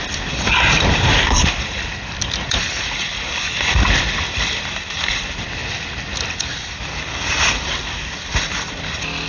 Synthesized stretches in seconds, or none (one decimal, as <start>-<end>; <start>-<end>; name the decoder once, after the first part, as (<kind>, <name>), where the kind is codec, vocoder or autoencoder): 0.0-5.6 (vocoder, BigVGAN v2); 7.5-9.3